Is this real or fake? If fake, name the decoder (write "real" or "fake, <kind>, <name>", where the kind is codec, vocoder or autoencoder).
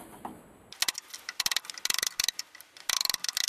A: real